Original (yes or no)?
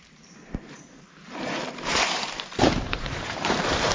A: no